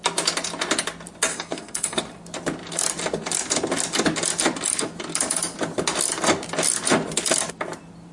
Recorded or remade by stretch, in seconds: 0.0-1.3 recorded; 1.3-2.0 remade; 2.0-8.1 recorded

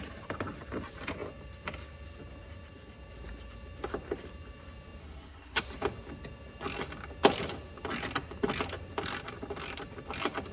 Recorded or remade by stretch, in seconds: 0.0-5.0 recorded; 5.0-5.6 remade; 5.6-10.5 recorded